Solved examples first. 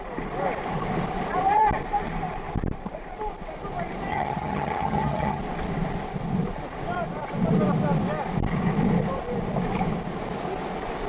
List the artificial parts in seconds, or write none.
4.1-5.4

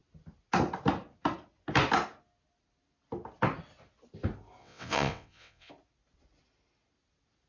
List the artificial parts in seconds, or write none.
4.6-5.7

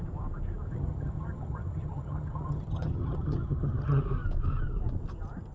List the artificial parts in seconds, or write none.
0.7-4.0

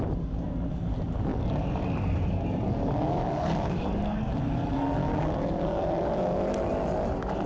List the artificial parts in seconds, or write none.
1.3-4.3; 5.0-6.4